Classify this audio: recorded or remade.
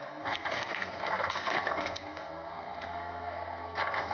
remade